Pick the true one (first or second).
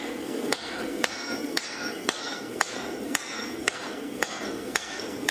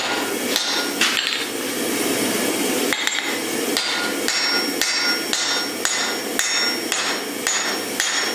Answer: second